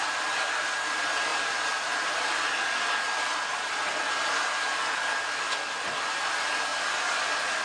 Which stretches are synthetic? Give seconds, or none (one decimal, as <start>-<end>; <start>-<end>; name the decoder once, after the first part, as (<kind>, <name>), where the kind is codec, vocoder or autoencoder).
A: 0.0-6.7 (vocoder, BigVGAN v2)